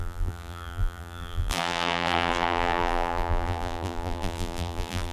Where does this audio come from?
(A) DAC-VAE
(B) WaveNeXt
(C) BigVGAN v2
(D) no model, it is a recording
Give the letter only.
C